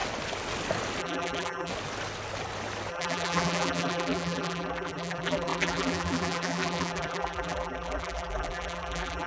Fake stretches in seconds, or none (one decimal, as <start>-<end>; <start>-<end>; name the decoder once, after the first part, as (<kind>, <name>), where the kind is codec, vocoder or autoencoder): 1.0-1.7 (vocoder, BigVGAN v2); 2.9-9.3